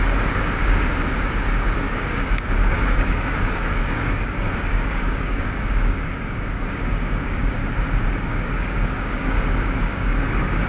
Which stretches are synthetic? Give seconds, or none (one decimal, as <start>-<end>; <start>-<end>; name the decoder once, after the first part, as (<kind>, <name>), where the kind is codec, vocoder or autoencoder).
0.0-7.6 (codec, DAC); 8.1-10.7